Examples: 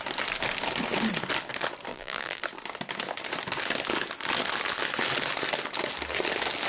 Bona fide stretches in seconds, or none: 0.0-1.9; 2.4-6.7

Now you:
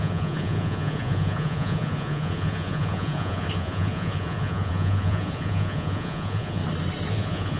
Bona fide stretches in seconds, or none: 6.6-7.1

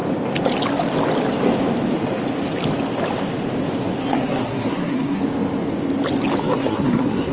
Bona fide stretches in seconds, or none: 0.0-4.0; 5.2-6.4

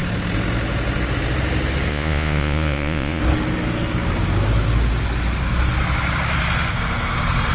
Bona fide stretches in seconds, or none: 0.0-1.9; 3.2-7.5